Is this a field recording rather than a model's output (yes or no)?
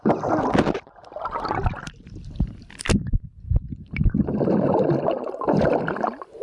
yes